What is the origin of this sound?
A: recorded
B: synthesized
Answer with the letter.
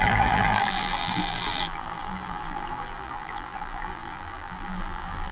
B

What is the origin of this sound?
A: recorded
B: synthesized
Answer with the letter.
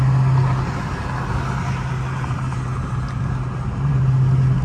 A